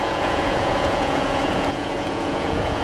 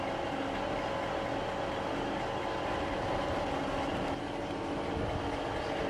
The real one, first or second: second